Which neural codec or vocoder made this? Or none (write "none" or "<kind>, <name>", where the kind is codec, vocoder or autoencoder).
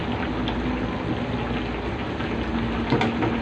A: none